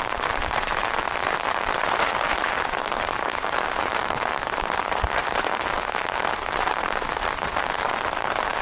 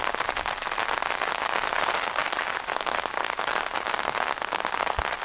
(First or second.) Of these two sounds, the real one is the second